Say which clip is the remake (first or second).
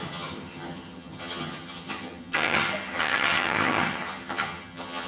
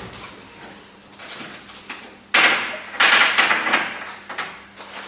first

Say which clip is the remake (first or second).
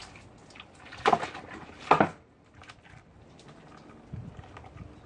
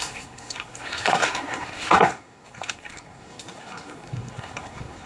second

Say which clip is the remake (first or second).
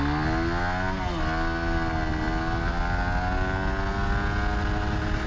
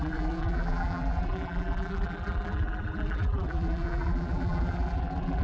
second